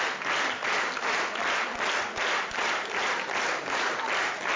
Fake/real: real